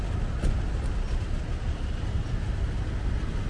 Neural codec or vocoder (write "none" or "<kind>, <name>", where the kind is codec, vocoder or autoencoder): none